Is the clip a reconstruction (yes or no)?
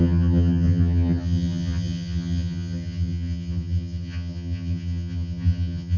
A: yes